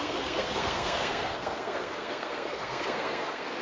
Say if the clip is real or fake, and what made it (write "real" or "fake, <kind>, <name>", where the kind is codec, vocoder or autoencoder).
fake, codec, SNAC